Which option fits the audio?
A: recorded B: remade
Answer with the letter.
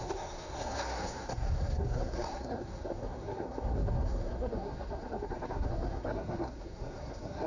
B